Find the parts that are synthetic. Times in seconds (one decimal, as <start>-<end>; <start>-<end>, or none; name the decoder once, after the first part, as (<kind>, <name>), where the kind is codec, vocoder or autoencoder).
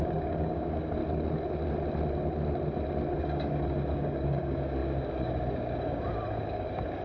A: 0.0-1.0 (codec, DAC); 3.2-7.0